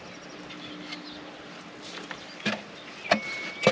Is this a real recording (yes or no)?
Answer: yes